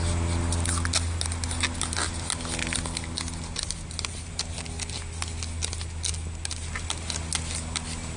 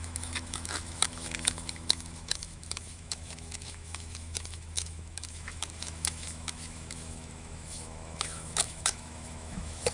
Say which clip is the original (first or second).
first